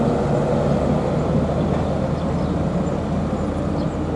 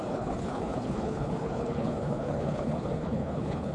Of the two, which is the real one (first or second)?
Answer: first